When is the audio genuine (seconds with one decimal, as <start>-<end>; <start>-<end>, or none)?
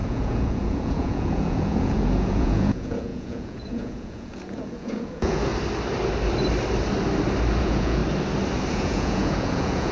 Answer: 5.5-7.6; 8.0-8.7